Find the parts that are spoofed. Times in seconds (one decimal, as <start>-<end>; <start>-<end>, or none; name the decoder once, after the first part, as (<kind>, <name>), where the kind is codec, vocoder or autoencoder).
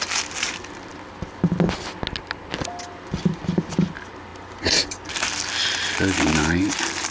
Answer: none